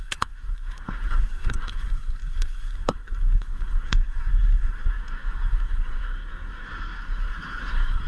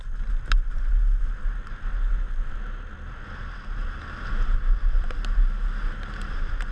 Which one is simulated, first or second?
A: first